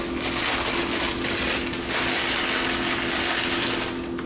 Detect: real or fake real